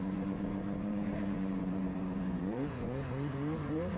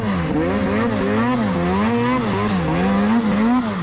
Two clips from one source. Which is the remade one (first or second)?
first